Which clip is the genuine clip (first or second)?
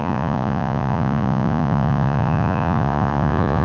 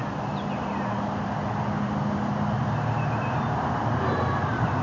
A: second